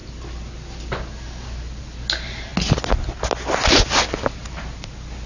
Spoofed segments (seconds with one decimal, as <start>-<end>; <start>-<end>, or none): none